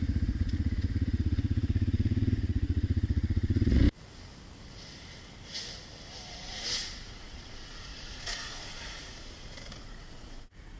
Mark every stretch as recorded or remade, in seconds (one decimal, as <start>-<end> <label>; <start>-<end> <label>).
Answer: 0.0-3.8 remade; 3.8-6.3 recorded; 6.3-10.8 remade